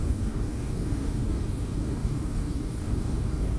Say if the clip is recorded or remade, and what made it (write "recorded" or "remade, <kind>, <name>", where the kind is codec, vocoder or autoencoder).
remade, codec, DAC